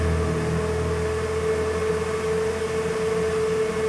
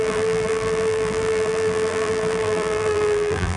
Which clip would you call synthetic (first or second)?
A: second